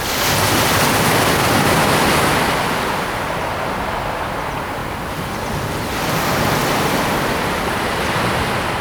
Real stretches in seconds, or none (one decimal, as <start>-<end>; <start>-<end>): 0.0-8.8